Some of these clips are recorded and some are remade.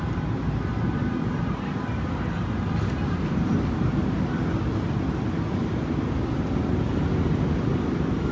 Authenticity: recorded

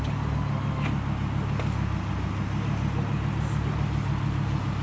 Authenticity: recorded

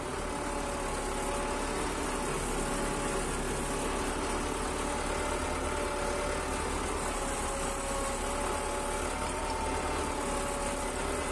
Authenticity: recorded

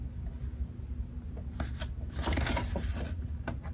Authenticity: recorded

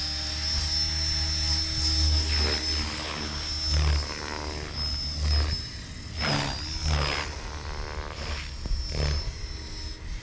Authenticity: recorded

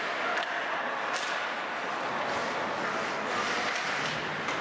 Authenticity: recorded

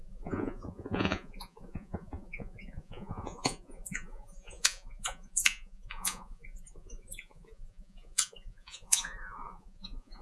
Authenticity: remade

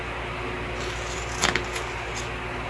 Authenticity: recorded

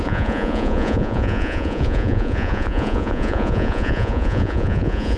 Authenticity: remade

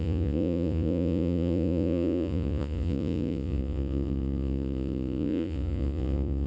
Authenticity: remade